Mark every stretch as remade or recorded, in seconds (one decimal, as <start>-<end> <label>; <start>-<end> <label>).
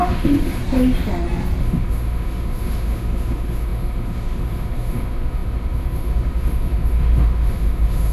0.0-0.6 remade; 0.6-1.6 recorded; 1.6-8.1 remade